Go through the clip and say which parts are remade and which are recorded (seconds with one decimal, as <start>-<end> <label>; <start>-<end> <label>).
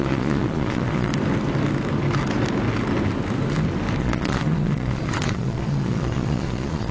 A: 0.0-1.1 remade; 1.1-4.0 recorded; 4.0-6.9 remade